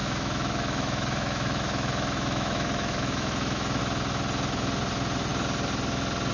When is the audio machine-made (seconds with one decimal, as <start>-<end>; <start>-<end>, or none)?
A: 0.0-3.8